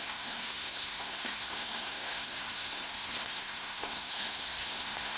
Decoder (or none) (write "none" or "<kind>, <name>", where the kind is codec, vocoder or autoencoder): codec, SNAC